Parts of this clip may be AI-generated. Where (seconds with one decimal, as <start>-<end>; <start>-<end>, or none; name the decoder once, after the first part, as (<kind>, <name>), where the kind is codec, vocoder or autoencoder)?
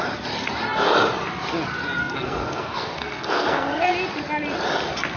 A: 2.0-3.9 (codec, SNAC)